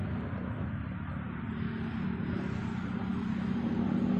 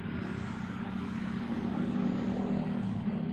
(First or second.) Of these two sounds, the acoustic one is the first